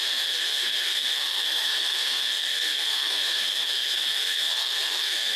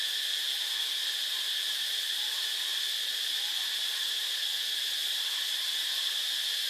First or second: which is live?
second